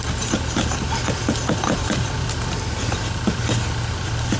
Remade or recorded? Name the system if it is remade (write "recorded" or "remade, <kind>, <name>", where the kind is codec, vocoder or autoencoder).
recorded